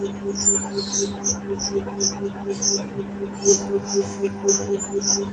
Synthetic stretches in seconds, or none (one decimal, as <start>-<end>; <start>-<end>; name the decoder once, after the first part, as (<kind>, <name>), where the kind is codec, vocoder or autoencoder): 3.5-4.8 (autoencoder, DAC-VAE)